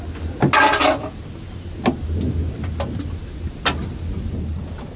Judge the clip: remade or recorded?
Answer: recorded